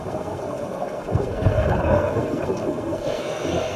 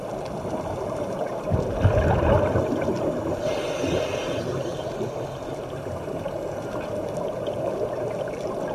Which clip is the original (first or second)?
second